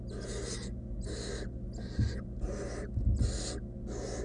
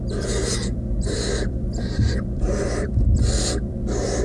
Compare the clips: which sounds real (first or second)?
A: first